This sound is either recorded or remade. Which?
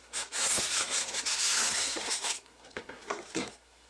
remade